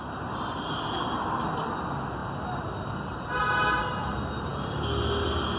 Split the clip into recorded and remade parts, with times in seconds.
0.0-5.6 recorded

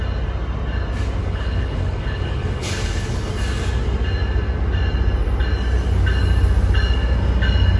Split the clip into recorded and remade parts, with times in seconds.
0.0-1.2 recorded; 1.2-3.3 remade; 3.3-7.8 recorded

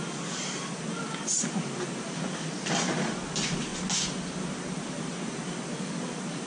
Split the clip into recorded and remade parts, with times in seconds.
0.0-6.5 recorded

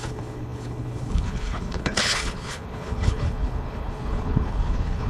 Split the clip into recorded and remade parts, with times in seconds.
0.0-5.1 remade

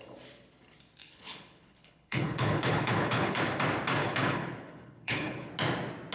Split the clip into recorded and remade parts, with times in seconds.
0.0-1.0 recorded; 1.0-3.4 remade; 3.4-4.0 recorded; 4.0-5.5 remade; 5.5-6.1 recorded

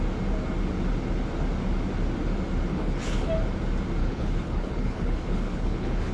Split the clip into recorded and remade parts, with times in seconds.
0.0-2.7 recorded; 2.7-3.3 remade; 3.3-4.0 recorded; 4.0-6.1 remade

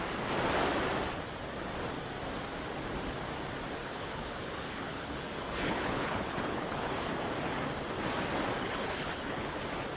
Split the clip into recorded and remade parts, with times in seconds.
0.0-3.8 recorded; 3.8-7.1 remade; 7.1-8.6 recorded; 8.6-9.6 remade; 9.6-10.0 recorded